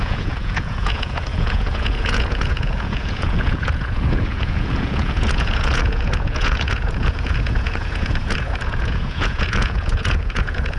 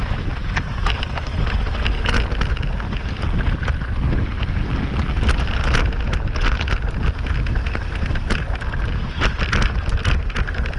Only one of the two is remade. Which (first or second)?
first